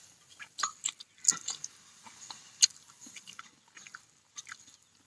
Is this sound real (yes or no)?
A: yes